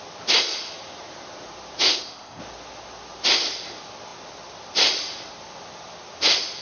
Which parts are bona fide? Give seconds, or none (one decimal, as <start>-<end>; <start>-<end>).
0.0-1.9; 2.4-6.6